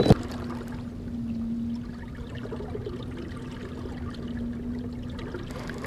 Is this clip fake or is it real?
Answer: real